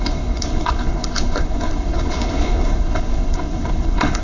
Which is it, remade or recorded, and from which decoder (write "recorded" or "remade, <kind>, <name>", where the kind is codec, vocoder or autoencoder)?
remade, codec, HILCodec